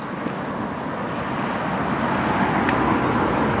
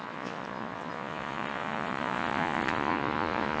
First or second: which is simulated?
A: second